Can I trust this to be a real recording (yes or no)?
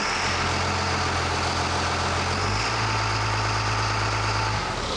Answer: yes